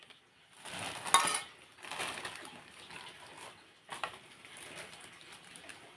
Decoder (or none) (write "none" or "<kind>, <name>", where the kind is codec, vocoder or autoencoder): none